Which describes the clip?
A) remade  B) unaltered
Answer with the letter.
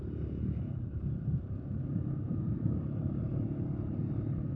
A